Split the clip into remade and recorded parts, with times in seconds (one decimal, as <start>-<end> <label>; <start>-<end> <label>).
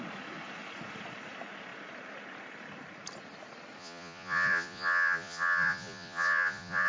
0.0-3.8 recorded; 3.8-6.9 remade